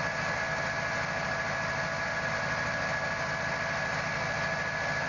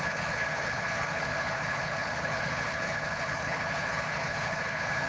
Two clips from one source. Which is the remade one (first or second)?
second